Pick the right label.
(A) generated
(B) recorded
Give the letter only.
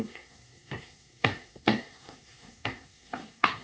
A